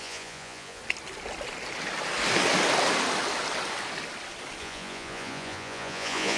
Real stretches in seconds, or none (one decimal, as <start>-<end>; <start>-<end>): 0.8-4.6